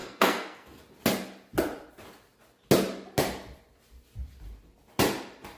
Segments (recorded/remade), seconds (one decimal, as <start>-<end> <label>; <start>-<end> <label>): 0.0-0.8 remade; 0.8-5.6 recorded